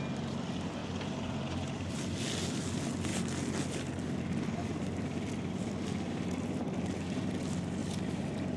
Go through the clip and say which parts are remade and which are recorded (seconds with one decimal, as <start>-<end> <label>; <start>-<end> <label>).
0.0-0.8 recorded; 0.8-1.9 remade; 1.9-7.8 recorded; 7.8-8.6 remade